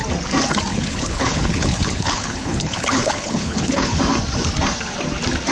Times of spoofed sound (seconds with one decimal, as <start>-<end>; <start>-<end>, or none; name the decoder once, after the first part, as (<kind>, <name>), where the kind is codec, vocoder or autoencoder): 0.7-4.0 (codec, HILCodec)